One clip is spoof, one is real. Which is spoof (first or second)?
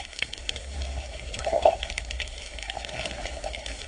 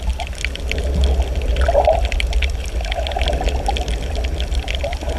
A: first